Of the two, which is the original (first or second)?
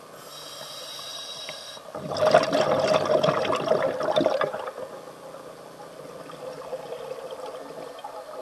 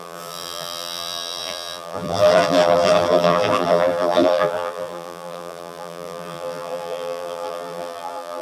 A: first